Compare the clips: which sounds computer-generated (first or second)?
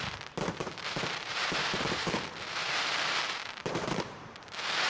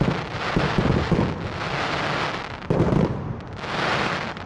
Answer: first